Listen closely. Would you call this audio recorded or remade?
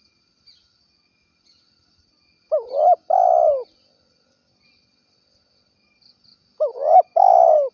recorded